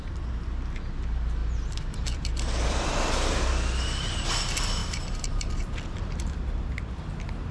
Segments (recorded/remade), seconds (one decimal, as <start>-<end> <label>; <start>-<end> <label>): 0.0-1.4 recorded; 1.4-3.5 remade; 3.5-4.8 recorded; 4.8-7.0 remade; 7.0-7.5 recorded